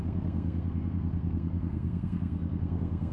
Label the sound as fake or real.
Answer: fake